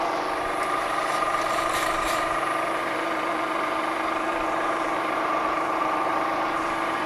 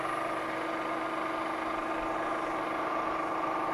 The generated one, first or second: first